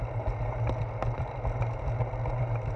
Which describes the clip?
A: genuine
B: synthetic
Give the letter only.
A